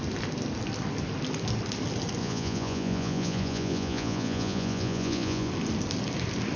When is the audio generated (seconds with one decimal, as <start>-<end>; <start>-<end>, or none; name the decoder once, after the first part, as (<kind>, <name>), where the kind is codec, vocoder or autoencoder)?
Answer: 2.2-5.5 (vocoder, Vocos)